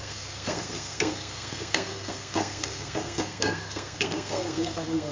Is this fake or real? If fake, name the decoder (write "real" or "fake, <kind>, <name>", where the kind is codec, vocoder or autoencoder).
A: fake, codec, SNAC